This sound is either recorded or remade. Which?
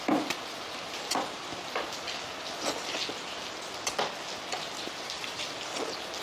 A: recorded